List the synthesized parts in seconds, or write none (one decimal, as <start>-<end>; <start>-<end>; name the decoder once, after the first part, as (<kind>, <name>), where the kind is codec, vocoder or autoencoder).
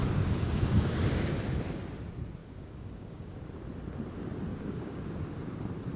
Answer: 0.0-1.0 (codec, DAC); 2.4-3.5; 4.5-5.1